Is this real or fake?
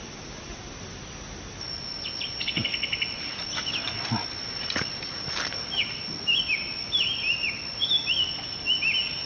real